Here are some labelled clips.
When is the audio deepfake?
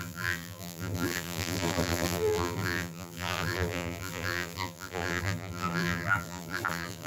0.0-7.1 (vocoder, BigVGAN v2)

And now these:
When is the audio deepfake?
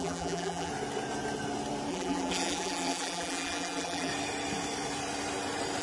0.0-0.7 (vocoder, BigVGAN v2); 1.9-4.1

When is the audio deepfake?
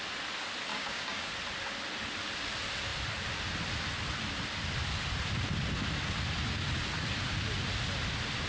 0.7-1.3 (codec, DAC)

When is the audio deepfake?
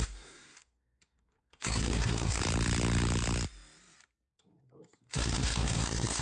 0.0-2.4 (codec, SNAC); 4.3-6.2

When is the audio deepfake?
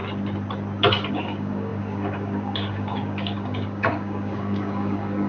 1.1-5.3 (codec, DAC)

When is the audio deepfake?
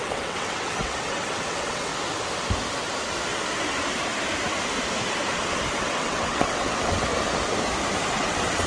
0.0-1.9 (vocoder, WaveNeXt); 5.8-7.1; 8.1-8.7